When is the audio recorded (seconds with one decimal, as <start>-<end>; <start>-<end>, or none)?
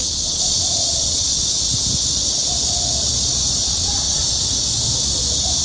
1.6-3.6; 4.3-5.6